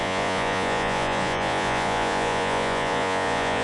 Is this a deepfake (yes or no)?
yes